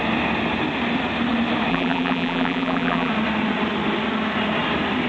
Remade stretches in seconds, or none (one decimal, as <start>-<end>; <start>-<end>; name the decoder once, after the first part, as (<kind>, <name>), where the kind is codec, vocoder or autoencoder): 1.7-3.1 (vocoder, BigVGAN v2)